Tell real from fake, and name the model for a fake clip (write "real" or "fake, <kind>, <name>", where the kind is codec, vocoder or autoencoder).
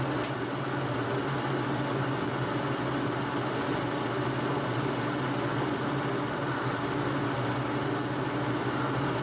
real